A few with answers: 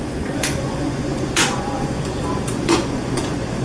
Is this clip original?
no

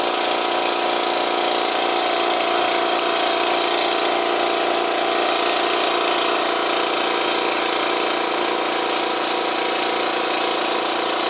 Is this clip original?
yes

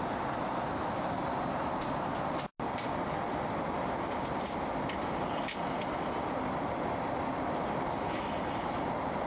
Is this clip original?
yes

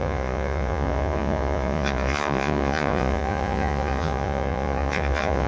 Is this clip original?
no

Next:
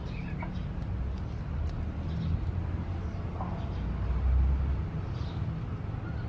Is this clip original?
yes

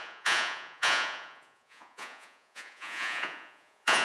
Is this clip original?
no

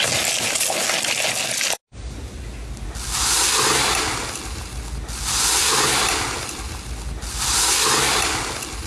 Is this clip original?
yes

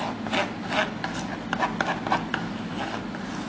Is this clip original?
yes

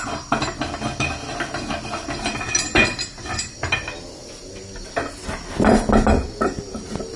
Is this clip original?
yes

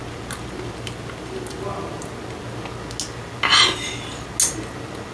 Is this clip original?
yes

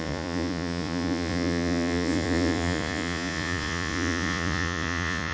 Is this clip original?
no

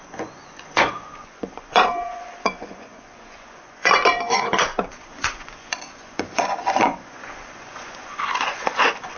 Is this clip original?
no